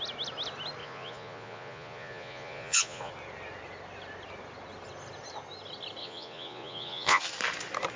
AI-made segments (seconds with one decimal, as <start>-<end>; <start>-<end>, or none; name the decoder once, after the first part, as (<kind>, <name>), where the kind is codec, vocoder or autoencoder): 0.8-3.1 (vocoder, Vocos); 6.0-7.2